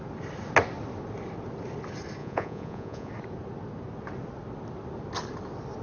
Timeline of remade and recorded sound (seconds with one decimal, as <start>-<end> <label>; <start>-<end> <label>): 0.0-2.2 recorded; 2.2-3.1 remade; 3.1-5.8 recorded